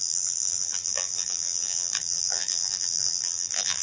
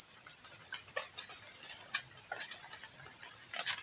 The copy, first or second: first